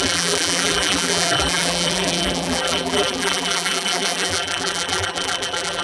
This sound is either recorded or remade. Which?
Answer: remade